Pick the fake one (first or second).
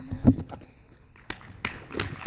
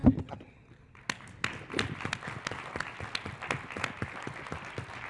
first